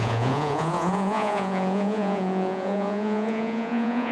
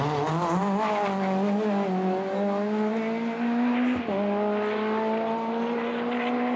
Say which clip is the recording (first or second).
second